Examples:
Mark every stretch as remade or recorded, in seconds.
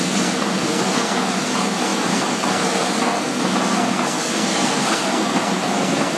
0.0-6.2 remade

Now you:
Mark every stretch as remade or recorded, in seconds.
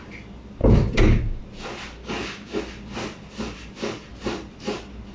0.0-0.6 recorded; 0.6-1.4 remade; 1.4-2.0 recorded; 2.0-2.6 remade; 2.6-5.1 recorded